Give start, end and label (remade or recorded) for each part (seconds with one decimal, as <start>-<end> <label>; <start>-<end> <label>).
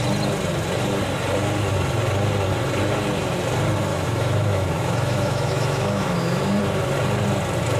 0.0-3.9 recorded; 3.9-6.6 remade; 6.6-7.8 recorded